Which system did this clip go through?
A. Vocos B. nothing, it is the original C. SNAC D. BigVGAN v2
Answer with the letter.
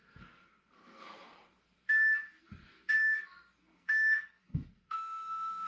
C